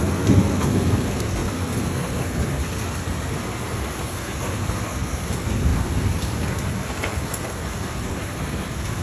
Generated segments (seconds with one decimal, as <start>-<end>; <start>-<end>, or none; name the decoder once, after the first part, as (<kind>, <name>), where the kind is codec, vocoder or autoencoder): 0.0-9.0 (codec, SNAC)

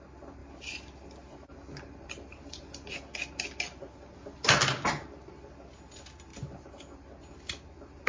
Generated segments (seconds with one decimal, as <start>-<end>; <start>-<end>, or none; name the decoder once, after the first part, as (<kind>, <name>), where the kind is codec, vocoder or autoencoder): none

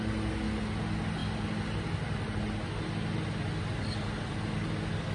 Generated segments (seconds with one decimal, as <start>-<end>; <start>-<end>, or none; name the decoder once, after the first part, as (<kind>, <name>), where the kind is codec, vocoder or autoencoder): none

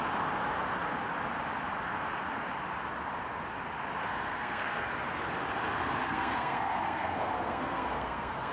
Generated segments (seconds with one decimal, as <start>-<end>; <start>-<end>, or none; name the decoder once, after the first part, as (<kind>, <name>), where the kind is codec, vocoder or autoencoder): 4.0-4.9 (codec, SNAC); 6.0-8.5

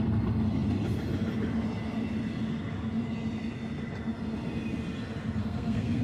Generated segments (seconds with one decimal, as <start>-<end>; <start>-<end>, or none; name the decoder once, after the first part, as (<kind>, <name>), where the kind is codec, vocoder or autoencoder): 5.4-6.0 (codec, SNAC)